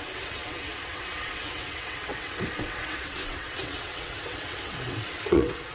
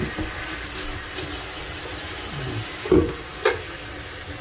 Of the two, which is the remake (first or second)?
first